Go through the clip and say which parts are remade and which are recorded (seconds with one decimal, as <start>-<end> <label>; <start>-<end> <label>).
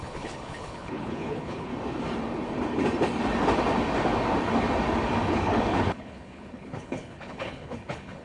0.0-1.7 remade; 1.7-5.3 recorded; 5.3-8.2 remade